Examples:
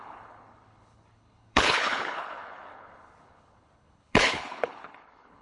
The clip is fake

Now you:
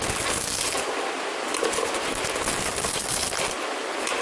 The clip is real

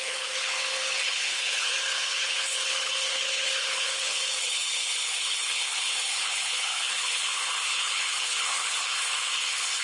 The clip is fake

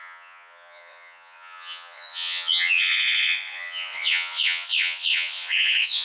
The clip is fake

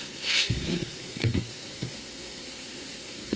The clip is fake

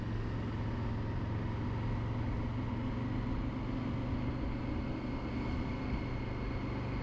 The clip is real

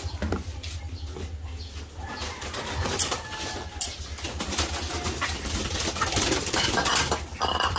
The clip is real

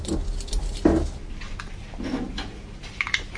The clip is real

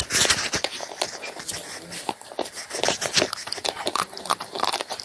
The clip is fake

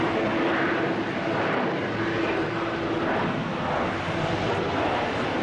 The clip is real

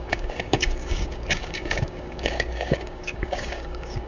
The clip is fake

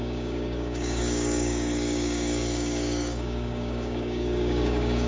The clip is fake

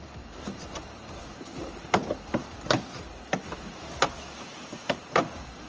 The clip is real